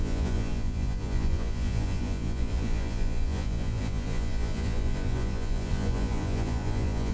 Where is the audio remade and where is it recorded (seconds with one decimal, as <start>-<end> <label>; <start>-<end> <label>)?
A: 0.0-7.1 remade